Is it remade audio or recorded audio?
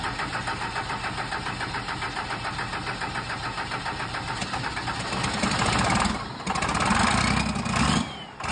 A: recorded